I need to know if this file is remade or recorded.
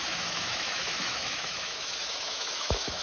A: remade